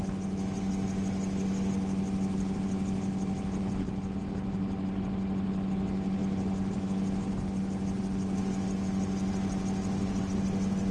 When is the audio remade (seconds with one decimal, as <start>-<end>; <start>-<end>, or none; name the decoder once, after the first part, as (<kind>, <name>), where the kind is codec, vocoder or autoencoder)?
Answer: none